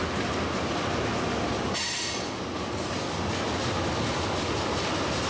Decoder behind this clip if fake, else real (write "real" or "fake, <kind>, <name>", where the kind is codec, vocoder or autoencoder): real